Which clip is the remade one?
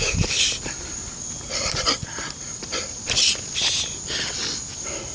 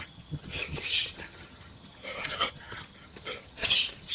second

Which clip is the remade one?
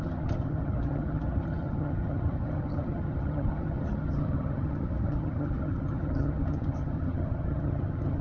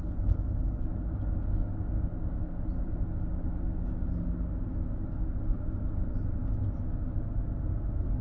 first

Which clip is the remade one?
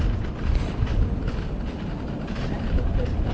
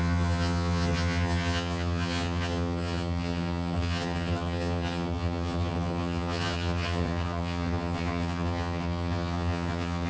second